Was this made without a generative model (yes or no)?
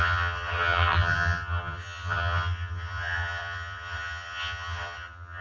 no